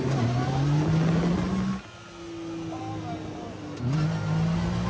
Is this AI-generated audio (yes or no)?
no